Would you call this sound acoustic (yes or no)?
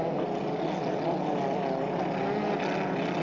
yes